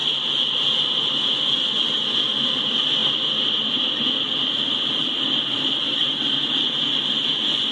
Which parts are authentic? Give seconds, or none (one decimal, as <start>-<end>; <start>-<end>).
0.0-7.7